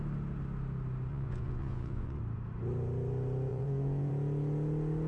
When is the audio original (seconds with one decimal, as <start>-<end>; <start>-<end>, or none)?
0.0-1.1; 2.2-3.5; 4.1-5.1